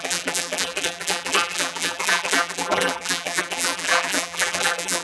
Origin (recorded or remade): remade